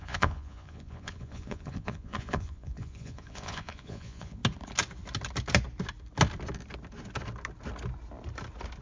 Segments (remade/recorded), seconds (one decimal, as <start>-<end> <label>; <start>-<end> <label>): 0.0-4.4 remade; 4.4-8.8 recorded